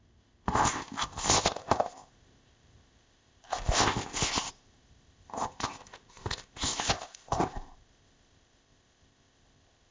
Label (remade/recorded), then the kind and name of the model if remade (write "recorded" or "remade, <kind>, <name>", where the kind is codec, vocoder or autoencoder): remade, codec, ZipCodec